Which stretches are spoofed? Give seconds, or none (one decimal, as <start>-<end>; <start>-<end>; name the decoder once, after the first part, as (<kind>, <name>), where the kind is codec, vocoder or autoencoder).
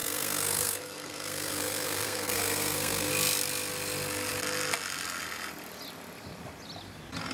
0.0-3.1 (codec, SNAC)